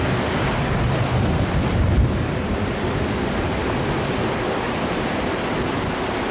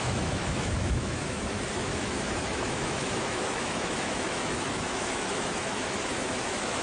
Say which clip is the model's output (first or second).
second